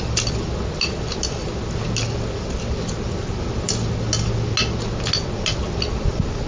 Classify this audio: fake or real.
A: real